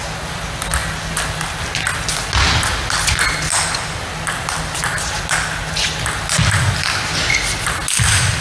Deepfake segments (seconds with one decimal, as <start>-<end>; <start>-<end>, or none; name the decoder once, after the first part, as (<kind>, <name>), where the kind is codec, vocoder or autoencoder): none